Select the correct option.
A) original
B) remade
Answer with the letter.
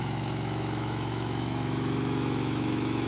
B